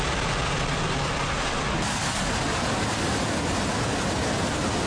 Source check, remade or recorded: recorded